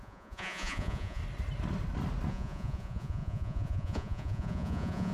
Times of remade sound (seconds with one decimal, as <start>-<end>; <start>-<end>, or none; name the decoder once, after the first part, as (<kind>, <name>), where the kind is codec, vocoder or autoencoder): 0.0-1.2 (vocoder, Vocos); 2.3-5.1